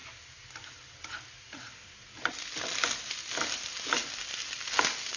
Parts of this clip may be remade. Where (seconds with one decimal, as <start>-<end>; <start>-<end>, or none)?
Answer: 1.4-1.8